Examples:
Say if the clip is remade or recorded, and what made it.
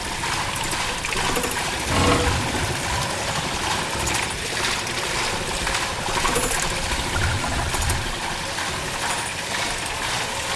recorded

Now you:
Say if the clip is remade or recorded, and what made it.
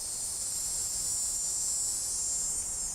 recorded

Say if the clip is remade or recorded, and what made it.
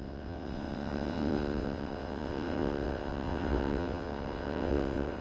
remade, vocoder, WaveNeXt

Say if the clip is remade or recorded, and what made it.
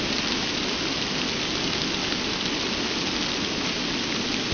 recorded